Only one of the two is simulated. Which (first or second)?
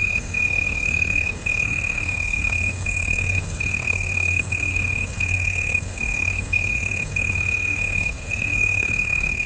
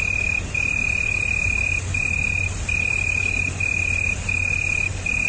first